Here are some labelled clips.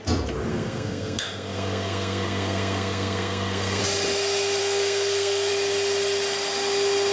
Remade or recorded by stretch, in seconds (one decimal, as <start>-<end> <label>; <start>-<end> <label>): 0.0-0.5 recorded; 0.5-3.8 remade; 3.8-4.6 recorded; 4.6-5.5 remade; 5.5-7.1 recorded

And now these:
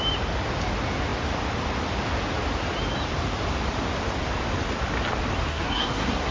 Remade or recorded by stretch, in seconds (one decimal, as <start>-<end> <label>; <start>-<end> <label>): 0.0-5.5 recorded; 5.5-6.3 remade

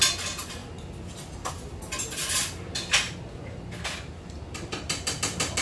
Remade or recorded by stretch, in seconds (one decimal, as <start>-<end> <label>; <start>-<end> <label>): 0.0-5.6 recorded

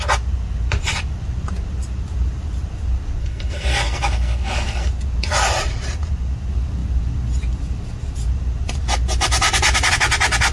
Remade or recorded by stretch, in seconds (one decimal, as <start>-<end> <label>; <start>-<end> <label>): 0.0-3.2 recorded; 3.2-4.9 remade; 4.9-10.5 recorded